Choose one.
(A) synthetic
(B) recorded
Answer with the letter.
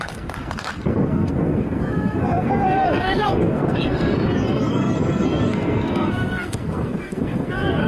A